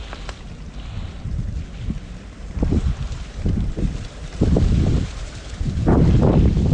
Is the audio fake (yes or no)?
yes